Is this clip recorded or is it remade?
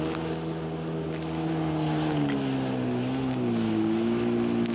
recorded